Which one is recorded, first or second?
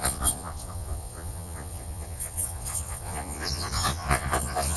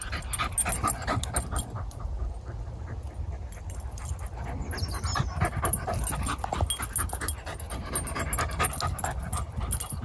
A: second